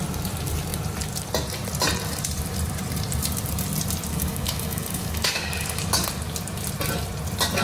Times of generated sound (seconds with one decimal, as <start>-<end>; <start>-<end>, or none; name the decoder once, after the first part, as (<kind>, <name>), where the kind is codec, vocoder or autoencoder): 4.1-6.1 (codec, DAC)